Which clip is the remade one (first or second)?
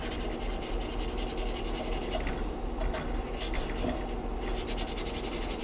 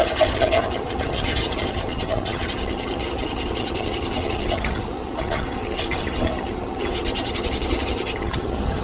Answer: second